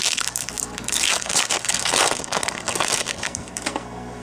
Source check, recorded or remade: remade